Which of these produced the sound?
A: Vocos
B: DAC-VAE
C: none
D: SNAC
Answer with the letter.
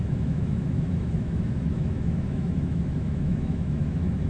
B